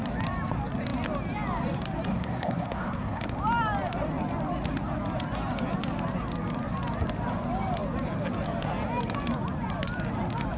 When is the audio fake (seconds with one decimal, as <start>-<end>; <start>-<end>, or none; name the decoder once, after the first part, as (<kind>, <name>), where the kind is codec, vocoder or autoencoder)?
2.1-3.4 (codec, SNAC)